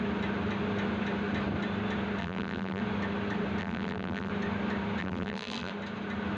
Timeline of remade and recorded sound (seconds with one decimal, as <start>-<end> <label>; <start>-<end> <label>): 0.0-2.2 recorded; 2.2-2.8 remade; 2.8-3.6 recorded; 3.6-4.3 remade; 4.3-5.0 recorded; 5.0-5.7 remade; 5.7-6.4 recorded

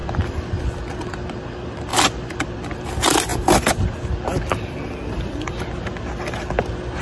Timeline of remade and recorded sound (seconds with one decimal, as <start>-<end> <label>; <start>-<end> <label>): 0.0-0.7 remade; 0.7-1.9 recorded; 1.9-2.6 remade; 2.6-7.0 recorded

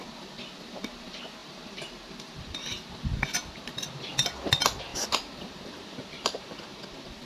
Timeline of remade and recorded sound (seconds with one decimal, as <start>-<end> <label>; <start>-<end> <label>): 0.0-1.4 recorded; 1.4-3.0 remade; 3.0-4.9 recorded; 4.9-6.8 remade; 6.8-7.3 recorded

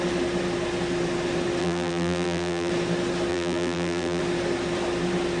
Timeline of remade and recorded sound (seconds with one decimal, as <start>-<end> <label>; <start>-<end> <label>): 0.0-1.6 recorded; 1.6-2.7 remade; 2.7-3.3 recorded; 3.3-4.2 remade; 4.2-5.4 recorded

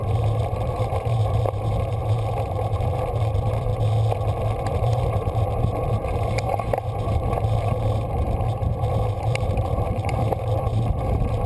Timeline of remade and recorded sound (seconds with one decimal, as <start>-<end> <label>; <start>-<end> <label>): 0.0-3.7 remade; 3.7-4.6 recorded; 4.6-11.5 remade

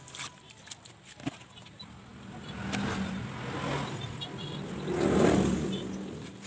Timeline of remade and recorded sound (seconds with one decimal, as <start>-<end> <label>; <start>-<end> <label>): 0.0-6.5 recorded